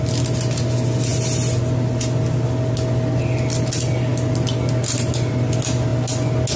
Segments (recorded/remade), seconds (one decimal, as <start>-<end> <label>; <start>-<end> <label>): 0.0-6.6 recorded